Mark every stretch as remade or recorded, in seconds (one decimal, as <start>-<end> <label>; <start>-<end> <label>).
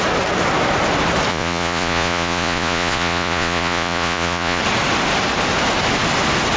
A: 0.0-1.3 recorded; 1.3-4.6 remade; 4.6-6.6 recorded